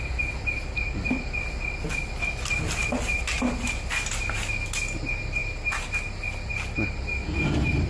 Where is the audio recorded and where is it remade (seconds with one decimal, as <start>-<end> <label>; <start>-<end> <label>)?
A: 0.0-7.9 recorded